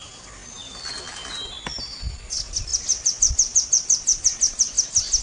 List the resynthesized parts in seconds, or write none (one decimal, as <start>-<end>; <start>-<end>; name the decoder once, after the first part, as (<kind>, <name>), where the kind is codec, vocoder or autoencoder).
none